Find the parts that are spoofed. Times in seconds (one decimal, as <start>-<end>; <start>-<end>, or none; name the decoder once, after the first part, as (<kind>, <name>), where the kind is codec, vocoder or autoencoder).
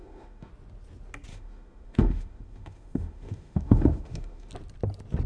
0.0-0.5 (autoencoder, DAC-VAE); 1.3-4.5